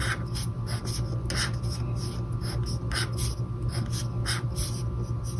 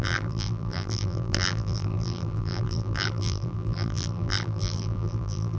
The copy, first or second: second